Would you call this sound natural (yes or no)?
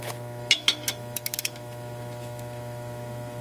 no